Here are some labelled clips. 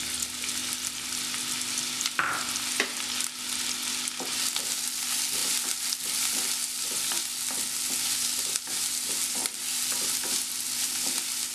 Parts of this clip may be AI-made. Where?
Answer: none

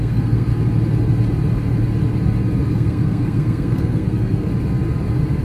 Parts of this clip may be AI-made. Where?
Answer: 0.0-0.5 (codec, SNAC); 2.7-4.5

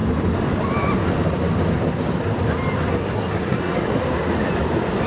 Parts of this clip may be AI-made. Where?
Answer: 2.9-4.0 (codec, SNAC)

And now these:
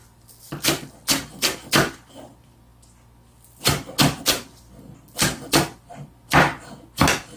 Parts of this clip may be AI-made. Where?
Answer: none

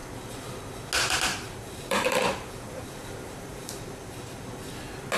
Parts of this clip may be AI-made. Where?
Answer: 1.3-4.4 (vocoder, BigVGAN v2)

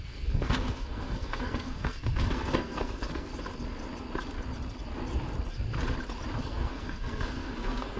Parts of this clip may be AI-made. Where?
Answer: 0.0-3.3 (codec, SNAC); 6.4-8.0

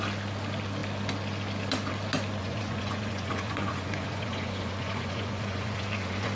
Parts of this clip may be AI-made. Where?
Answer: 2.4-6.3 (vocoder, Vocos)

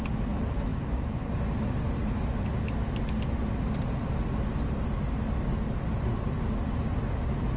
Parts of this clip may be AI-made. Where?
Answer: none